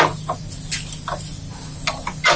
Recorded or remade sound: recorded